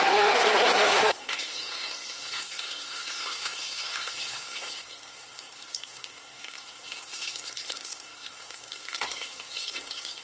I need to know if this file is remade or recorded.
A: remade